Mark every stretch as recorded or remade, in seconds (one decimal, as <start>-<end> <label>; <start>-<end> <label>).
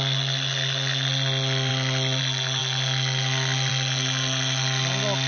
0.0-5.3 recorded